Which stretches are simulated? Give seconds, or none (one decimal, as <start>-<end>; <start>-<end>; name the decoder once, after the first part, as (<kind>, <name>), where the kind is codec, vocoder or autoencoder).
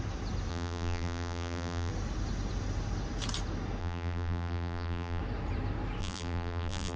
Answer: 0.5-1.9 (vocoder, BigVGAN v2); 3.8-5.2; 6.0-7.0